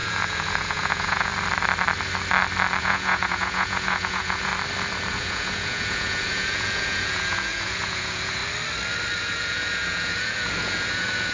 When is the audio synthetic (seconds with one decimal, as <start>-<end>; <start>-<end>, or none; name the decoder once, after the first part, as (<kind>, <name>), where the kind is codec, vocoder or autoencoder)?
0.0-1.3 (vocoder, Vocos); 2.8-4.5; 5.1-8.4; 9.2-11.3